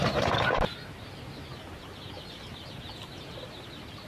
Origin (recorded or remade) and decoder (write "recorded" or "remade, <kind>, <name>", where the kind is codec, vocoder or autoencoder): recorded